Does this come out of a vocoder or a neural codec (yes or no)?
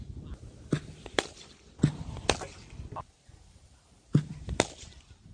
no